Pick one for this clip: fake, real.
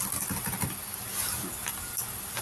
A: real